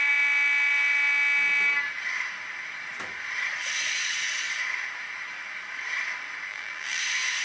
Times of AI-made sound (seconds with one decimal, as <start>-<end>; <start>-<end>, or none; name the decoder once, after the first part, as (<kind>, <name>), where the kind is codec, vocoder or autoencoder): 6.5-7.0 (vocoder, BigVGAN v2)